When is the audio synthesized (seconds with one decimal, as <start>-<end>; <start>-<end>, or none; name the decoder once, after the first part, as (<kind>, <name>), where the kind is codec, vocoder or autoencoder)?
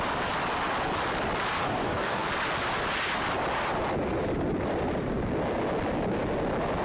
1.6-2.3 (codec, DAC)